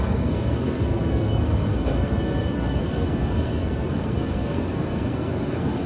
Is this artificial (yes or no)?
yes